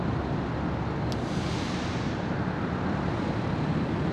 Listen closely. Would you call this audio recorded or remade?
recorded